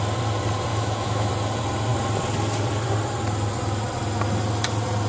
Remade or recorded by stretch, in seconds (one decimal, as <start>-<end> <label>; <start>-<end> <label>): 0.0-0.7 recorded; 0.7-1.3 remade; 1.3-5.1 recorded